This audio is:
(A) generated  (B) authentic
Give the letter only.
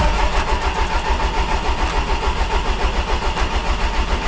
B